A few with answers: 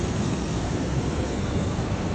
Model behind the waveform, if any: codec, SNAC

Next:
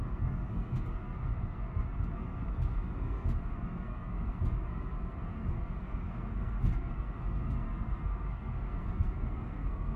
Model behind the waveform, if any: codec, SNAC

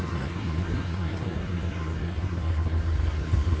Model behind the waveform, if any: codec, SNAC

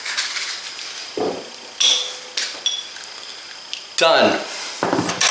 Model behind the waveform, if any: none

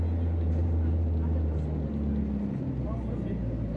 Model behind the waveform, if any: none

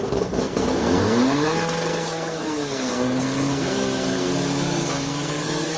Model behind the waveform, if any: codec, SNAC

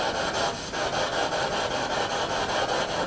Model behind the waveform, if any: none